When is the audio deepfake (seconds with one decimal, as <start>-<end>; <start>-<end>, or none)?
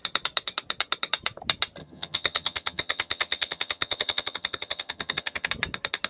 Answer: 1.8-5.5